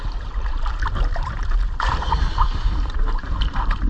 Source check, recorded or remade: remade